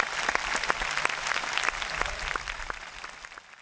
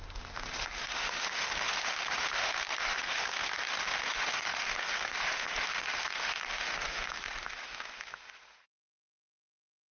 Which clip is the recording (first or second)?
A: first